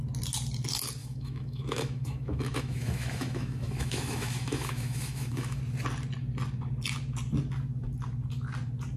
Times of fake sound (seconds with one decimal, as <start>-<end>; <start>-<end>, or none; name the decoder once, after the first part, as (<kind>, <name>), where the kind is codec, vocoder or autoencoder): 1.0-5.6 (autoencoder, DAC-VAE)